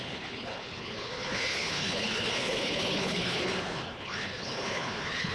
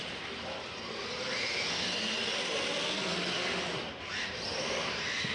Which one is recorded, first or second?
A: second